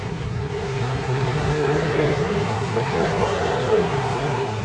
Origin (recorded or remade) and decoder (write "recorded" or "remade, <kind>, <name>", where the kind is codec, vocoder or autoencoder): remade, codec, SNAC